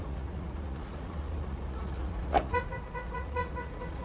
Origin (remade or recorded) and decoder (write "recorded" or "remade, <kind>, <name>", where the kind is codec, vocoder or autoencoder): remade, vocoder, Vocos